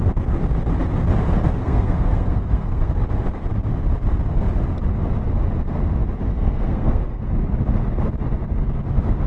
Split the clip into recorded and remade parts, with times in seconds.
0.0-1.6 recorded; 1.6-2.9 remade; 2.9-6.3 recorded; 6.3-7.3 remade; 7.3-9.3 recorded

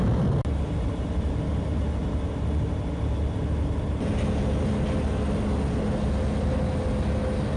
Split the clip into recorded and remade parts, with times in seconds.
0.0-7.6 recorded

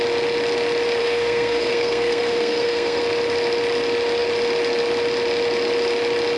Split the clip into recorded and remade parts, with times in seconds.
0.0-1.0 recorded; 1.0-3.0 remade; 3.0-6.4 recorded

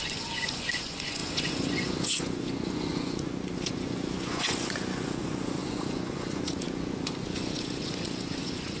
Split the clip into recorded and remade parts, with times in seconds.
0.0-8.8 remade

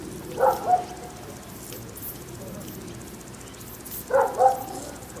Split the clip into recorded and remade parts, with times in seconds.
0.0-5.2 recorded

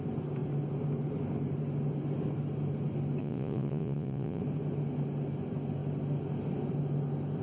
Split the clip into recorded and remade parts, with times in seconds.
0.0-3.2 recorded; 3.2-4.4 remade; 4.4-7.4 recorded

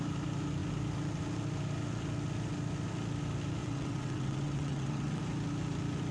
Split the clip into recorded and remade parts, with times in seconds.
0.0-3.6 recorded; 3.6-5.2 remade; 5.2-6.1 recorded

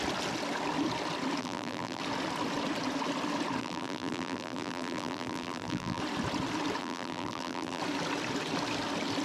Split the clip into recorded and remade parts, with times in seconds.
0.0-1.4 recorded; 1.4-2.0 remade; 2.0-3.6 recorded; 3.6-6.0 remade; 6.0-6.8 recorded; 6.8-7.8 remade; 7.8-9.2 recorded